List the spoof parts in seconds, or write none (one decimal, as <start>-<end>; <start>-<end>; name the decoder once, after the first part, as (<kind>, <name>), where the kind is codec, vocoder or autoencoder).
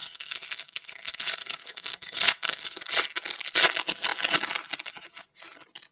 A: 0.0-2.8 (codec, SNAC)